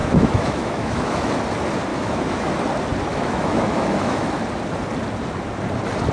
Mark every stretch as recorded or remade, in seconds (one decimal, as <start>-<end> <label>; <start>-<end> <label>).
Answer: 0.0-1.3 remade; 1.3-1.9 recorded; 1.9-2.5 remade; 2.5-3.1 recorded; 3.1-4.4 remade; 4.4-6.1 recorded